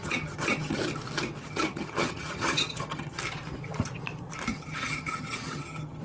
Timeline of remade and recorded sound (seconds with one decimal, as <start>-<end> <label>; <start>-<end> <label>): 0.0-0.8 remade; 0.8-1.4 recorded; 1.4-3.2 remade; 3.2-4.5 recorded; 4.5-6.0 remade